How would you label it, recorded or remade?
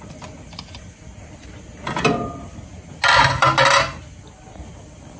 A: recorded